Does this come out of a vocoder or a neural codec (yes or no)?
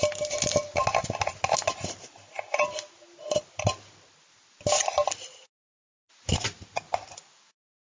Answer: no